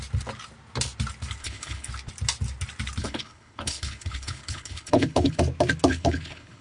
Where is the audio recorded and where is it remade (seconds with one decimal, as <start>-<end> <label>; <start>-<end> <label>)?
0.0-1.4 recorded; 1.4-1.9 remade; 1.9-3.0 recorded; 3.0-5.4 remade; 5.4-5.9 recorded; 5.9-6.6 remade